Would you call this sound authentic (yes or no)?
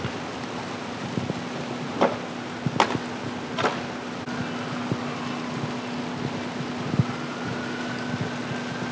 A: yes